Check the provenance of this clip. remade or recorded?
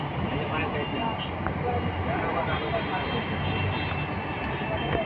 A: recorded